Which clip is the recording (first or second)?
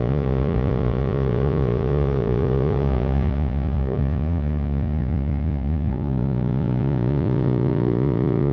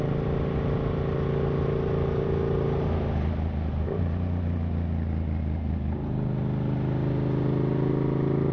second